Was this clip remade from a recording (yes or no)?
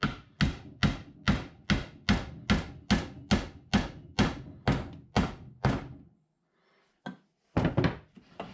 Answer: no